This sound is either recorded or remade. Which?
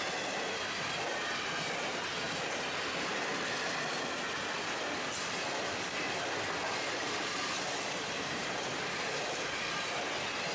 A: recorded